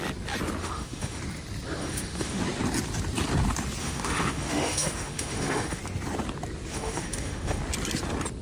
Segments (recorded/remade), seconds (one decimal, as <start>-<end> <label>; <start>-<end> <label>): 0.0-0.6 recorded; 0.6-1.2 remade; 1.2-1.8 recorded; 1.8-2.4 remade; 2.4-3.8 recorded; 3.8-5.8 remade; 5.8-6.7 recorded; 6.7-7.6 remade; 7.6-8.4 recorded